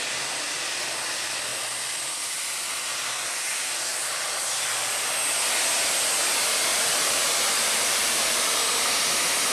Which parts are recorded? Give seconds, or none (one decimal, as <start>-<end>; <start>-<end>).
0.0-3.9; 4.7-6.7; 8.6-9.5